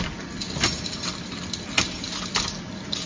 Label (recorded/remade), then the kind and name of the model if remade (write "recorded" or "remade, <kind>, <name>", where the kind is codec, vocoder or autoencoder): recorded